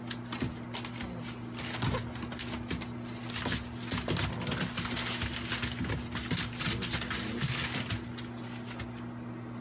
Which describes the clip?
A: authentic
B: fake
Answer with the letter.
A